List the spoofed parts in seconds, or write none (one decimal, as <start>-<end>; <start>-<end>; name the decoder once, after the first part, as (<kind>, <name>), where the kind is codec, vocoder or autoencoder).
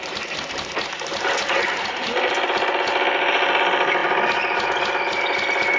none